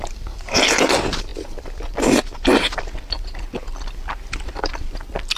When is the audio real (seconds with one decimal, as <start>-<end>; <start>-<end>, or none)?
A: 0.0-5.4